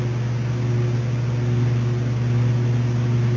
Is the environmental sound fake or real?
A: real